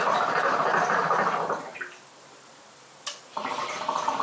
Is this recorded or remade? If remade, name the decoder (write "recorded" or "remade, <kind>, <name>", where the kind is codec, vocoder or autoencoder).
remade, vocoder, BigVGAN v2